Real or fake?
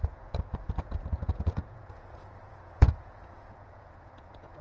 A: fake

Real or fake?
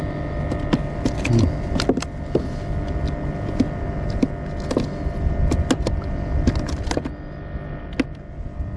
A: real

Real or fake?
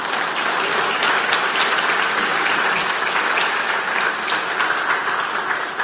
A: real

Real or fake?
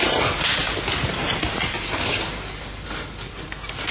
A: real